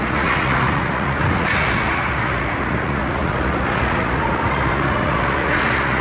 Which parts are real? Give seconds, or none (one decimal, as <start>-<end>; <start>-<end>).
none

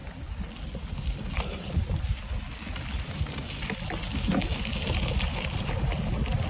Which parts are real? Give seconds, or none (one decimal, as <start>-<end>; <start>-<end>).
0.0-6.5

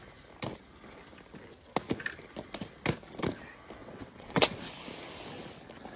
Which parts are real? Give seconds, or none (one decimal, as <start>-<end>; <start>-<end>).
0.0-3.8; 4.7-6.0

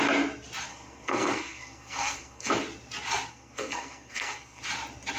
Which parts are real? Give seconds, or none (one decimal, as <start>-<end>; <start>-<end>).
0.0-0.7; 2.5-3.3; 4.6-5.2

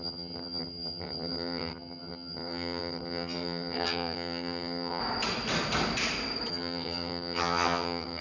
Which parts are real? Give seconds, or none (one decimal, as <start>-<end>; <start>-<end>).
5.0-6.5

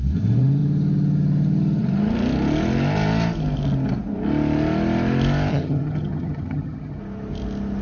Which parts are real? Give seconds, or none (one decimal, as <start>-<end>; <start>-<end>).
0.0-5.5; 7.0-7.8